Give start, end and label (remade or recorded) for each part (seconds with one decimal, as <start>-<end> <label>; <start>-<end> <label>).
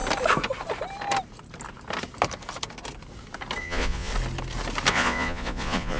0.0-3.6 recorded; 3.6-4.1 remade; 4.1-4.9 recorded; 4.9-6.0 remade